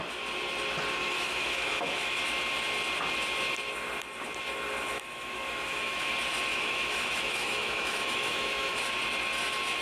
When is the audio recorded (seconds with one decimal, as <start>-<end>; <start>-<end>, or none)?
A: 0.0-1.0; 2.2-4.9; 6.1-6.5; 8.8-9.8